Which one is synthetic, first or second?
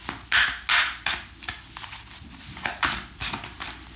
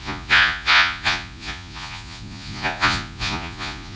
second